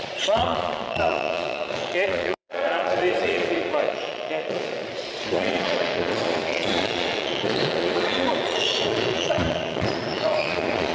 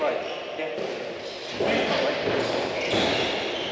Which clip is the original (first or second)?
second